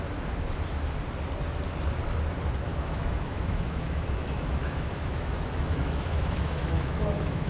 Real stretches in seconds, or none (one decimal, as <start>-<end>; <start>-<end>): 0.0-2.7